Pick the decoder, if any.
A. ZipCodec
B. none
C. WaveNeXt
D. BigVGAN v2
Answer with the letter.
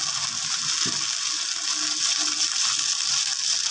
B